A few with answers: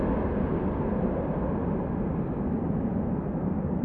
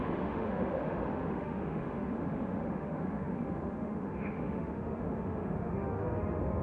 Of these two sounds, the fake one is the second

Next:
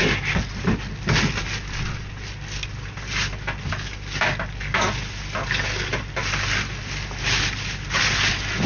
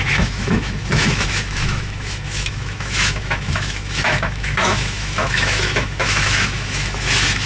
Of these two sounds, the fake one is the second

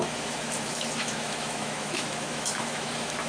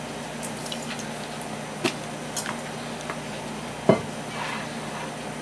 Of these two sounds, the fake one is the first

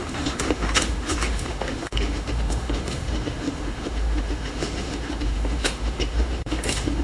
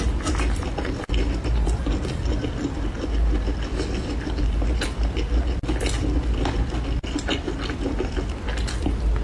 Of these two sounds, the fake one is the first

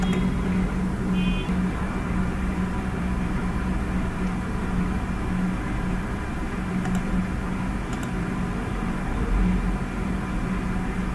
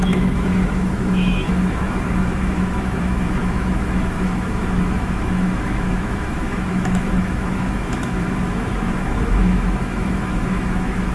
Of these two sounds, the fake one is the second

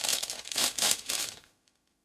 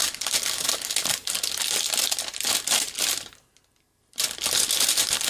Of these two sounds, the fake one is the first